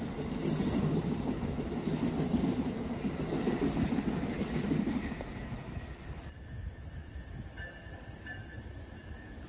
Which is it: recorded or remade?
recorded